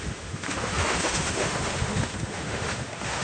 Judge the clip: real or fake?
fake